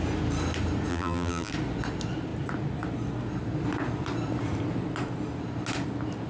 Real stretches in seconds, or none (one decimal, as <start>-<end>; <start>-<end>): 0.0-0.9; 1.5-6.3